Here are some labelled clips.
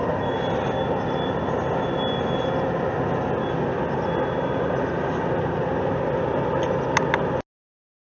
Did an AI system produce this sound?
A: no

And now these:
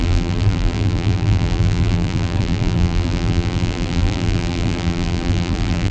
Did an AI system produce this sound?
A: yes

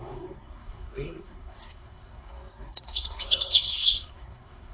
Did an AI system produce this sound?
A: yes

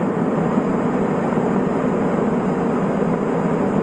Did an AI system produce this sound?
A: no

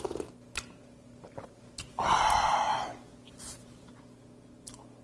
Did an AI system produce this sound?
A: no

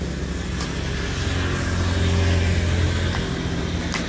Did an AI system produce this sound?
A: no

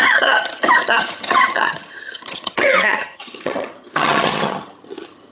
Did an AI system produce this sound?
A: yes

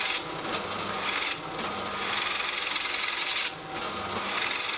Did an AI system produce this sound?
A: no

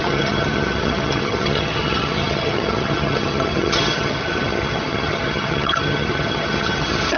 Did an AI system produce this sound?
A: yes